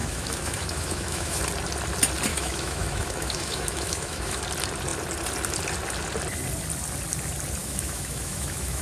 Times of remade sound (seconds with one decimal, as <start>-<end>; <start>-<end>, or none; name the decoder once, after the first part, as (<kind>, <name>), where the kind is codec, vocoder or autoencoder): 0.0-1.4 (autoencoder, DAC-VAE); 2.3-4.4; 7.6-8.8